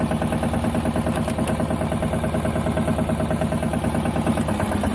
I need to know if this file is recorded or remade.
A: recorded